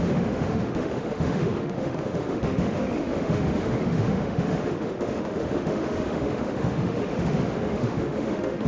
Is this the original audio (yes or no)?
no